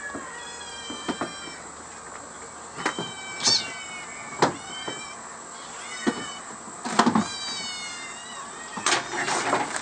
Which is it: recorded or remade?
recorded